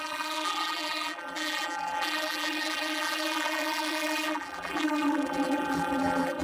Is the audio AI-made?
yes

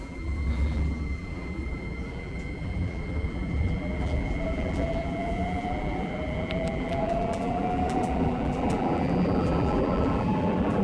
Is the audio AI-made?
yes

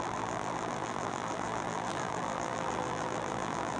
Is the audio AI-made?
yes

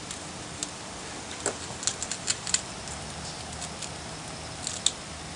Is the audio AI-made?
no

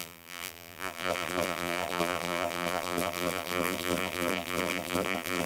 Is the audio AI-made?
yes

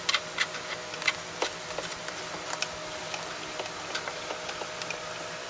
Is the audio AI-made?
no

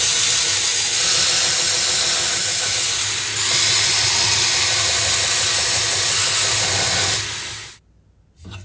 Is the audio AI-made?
no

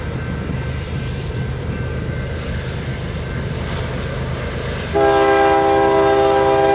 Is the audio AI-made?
no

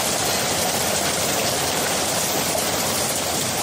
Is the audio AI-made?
yes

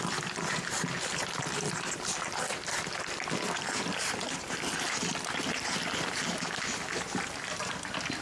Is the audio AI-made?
no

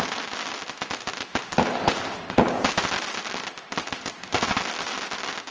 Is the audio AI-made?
no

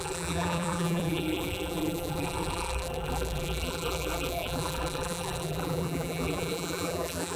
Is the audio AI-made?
yes